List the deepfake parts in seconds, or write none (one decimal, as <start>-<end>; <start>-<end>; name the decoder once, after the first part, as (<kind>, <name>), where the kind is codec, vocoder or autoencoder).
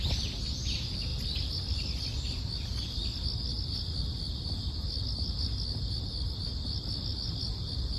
none